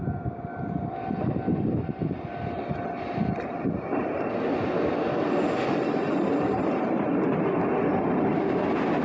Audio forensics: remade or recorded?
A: recorded